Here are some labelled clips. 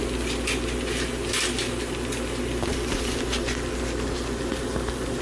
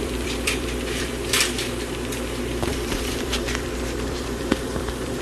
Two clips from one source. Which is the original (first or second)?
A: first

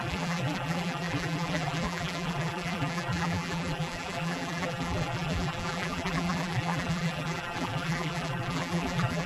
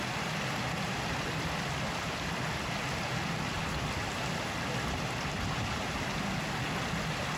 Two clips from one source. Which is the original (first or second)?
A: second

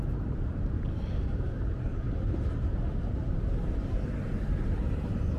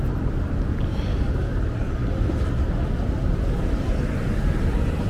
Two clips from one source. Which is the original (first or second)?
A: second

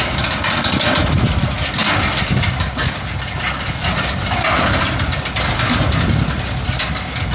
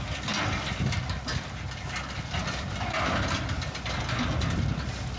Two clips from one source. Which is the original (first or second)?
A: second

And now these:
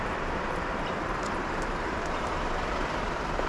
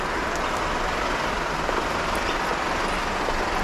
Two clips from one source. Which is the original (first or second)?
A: second